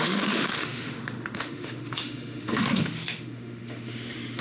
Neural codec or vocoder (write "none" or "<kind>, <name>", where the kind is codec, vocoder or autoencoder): autoencoder, DAC-VAE